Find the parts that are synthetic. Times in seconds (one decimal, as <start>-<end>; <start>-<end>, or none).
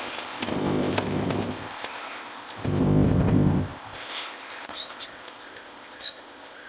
0.0-6.7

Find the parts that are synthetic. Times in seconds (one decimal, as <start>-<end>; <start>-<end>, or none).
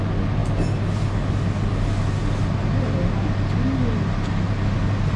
none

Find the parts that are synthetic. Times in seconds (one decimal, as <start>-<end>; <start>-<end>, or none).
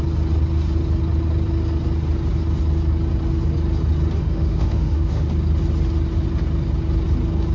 4.2-5.3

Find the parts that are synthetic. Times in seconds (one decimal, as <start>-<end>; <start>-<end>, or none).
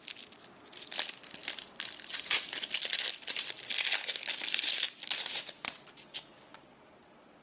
1.4-4.8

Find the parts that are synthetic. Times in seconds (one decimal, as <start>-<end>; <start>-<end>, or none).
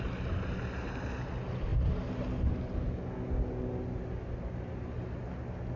none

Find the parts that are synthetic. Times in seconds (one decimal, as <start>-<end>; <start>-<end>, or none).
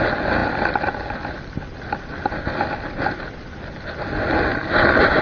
none